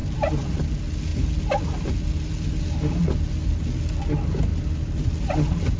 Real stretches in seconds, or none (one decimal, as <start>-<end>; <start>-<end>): 0.6-5.8